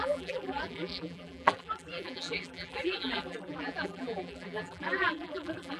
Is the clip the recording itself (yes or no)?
no